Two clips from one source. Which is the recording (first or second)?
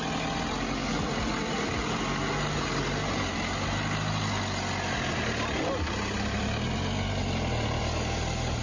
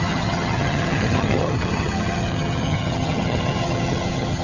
first